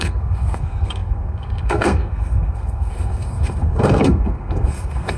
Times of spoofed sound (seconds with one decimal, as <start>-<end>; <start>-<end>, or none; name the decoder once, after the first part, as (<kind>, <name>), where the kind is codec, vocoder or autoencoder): 0.0-5.2 (codec, SNAC)